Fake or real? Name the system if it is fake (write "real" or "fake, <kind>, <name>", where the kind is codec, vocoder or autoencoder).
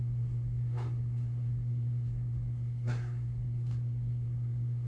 fake, codec, SNAC